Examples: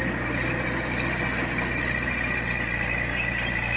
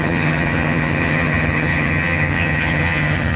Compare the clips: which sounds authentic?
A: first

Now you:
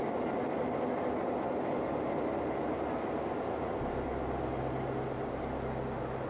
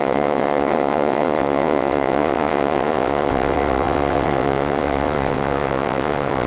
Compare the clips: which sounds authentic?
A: first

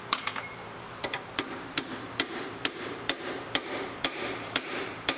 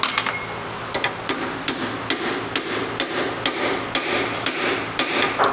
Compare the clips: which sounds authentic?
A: second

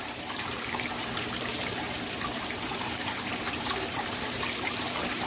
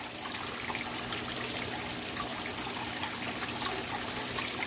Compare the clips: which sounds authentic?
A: second